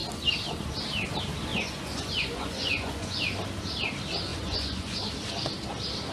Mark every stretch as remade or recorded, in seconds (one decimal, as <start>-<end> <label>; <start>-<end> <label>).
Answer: 0.0-1.5 recorded; 1.5-3.2 remade; 3.2-4.3 recorded; 4.3-5.1 remade; 5.1-6.1 recorded